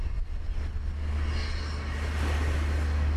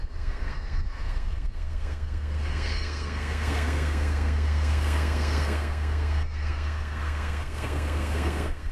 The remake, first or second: second